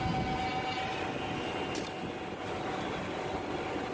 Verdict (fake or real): real